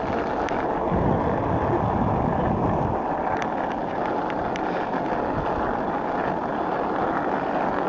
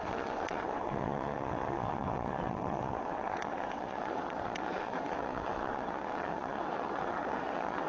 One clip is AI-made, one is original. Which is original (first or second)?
first